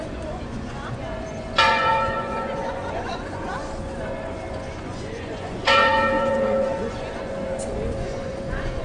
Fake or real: fake